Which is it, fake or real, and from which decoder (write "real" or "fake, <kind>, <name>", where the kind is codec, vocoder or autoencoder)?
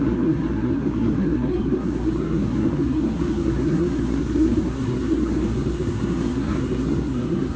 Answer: fake, codec, SNAC